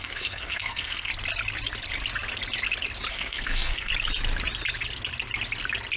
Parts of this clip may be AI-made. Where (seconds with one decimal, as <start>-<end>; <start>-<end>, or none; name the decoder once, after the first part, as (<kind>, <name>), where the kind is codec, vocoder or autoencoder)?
0.0-1.1 (codec, SNAC); 3.1-3.9